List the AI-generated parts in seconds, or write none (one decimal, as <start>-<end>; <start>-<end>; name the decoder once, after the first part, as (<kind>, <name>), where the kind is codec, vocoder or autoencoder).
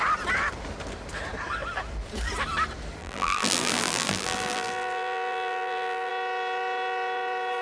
3.0-6.1 (vocoder, BigVGAN v2)